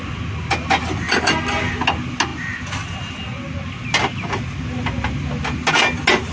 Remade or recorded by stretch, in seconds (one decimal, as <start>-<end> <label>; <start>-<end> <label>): 0.0-6.3 recorded